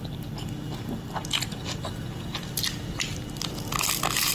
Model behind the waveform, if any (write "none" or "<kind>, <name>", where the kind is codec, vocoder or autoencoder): none